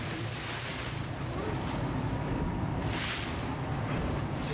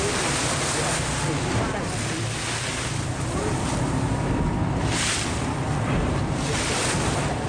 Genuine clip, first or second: second